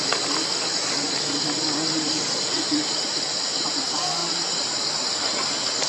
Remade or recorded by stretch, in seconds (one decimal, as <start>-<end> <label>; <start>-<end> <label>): 0.0-5.9 recorded